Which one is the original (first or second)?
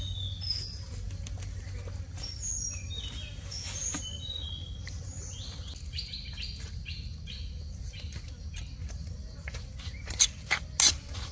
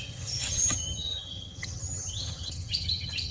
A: first